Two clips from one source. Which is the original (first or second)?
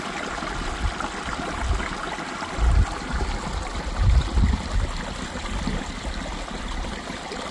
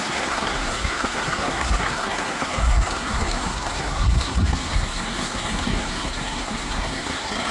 first